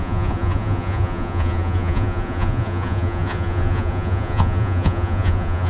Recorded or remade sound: remade